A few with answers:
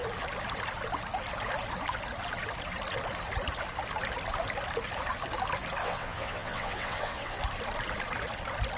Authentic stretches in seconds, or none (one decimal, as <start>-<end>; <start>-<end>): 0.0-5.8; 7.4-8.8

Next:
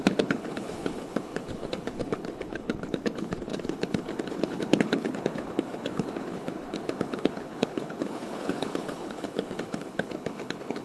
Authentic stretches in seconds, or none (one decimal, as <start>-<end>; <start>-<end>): none

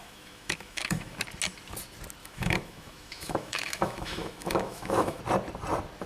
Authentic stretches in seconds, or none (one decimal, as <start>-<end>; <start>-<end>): 1.2-2.2; 5.2-6.1

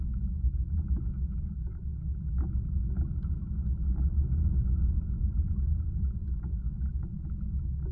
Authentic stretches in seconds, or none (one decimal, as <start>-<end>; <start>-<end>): 0.0-7.9

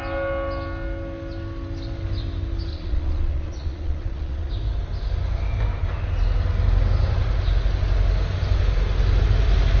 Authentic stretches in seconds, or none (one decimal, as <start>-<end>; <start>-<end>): 0.0-2.7; 4.5-9.8